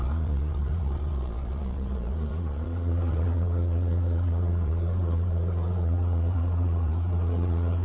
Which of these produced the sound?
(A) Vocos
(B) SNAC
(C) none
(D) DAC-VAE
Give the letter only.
A